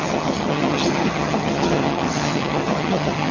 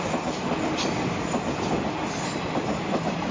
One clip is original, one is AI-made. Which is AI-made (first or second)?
first